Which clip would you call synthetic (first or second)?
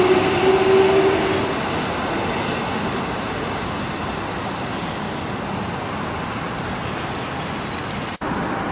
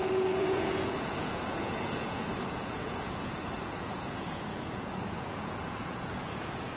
second